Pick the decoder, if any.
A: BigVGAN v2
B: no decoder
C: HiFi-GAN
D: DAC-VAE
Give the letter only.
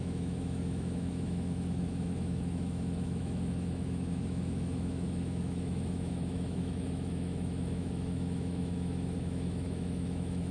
D